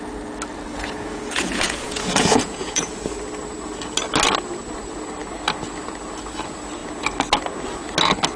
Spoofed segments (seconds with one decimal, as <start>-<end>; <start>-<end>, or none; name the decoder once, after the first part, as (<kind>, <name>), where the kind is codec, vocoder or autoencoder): 0.7-3.0 (vocoder, Vocos)